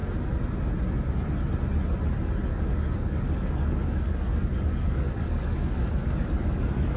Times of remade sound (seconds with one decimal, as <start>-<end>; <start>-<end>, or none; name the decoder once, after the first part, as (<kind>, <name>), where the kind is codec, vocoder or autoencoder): 2.5-7.0 (codec, DAC)